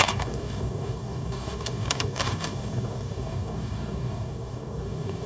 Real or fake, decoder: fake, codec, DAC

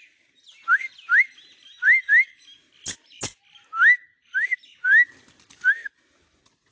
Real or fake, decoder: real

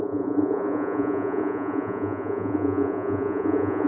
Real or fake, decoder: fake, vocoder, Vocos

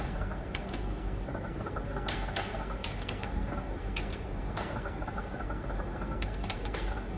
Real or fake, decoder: fake, codec, SNAC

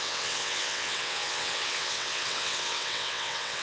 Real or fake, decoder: fake, vocoder, WaveNeXt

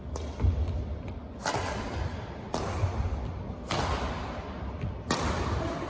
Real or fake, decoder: real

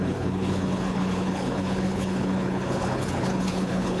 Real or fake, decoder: fake, codec, HILCodec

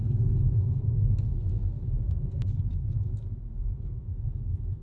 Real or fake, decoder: fake, codec, SNAC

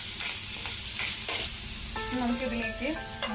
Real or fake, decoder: real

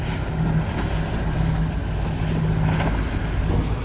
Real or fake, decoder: real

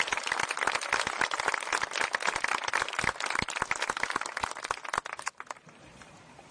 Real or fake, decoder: real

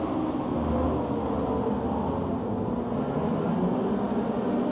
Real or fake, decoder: real